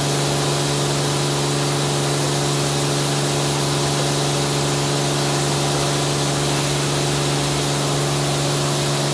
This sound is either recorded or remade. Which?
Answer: recorded